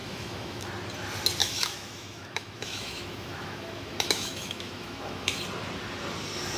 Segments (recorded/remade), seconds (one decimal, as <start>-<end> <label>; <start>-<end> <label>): 0.0-0.7 remade; 0.7-1.4 recorded; 1.4-5.4 remade; 5.4-6.6 recorded